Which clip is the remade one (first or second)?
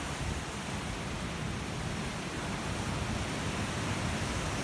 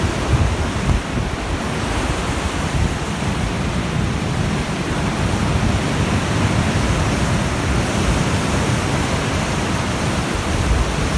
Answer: second